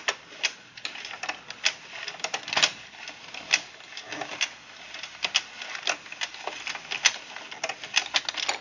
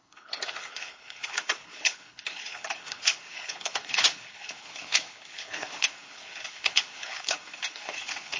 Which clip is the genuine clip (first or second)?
first